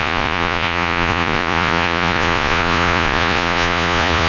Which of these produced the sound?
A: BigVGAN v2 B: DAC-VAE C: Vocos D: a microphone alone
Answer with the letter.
C